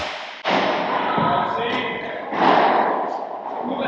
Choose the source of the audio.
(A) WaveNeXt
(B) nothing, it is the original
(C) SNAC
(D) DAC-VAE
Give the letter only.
B